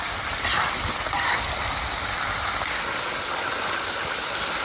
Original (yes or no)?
yes